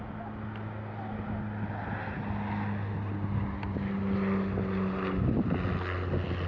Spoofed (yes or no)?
no